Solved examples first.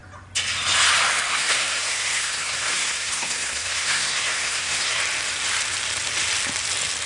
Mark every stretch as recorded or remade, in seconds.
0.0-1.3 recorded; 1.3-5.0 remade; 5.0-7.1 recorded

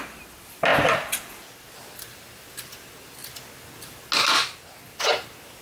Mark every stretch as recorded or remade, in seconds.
0.0-5.6 recorded

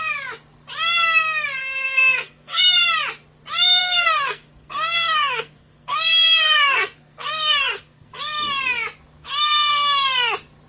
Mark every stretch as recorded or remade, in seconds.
0.0-1.6 recorded; 1.6-2.6 remade; 2.6-3.8 recorded; 3.8-8.2 remade; 8.2-9.2 recorded; 9.2-9.7 remade; 9.7-10.7 recorded

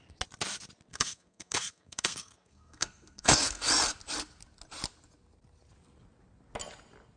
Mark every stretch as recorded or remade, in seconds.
0.0-0.9 recorded; 0.9-3.7 remade; 3.7-7.2 recorded

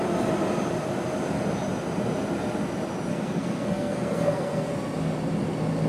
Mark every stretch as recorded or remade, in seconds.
0.0-3.1 recorded; 3.1-4.7 remade; 4.7-5.9 recorded

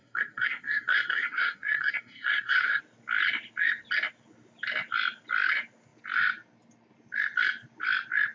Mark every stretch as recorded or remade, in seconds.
0.0-2.8 remade; 2.8-8.3 recorded

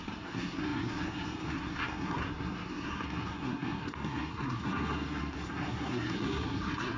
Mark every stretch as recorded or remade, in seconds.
0.0-7.0 remade

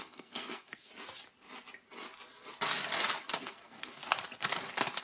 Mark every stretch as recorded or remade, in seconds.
0.0-0.9 remade; 0.9-3.2 recorded; 3.2-4.0 remade; 4.0-5.0 recorded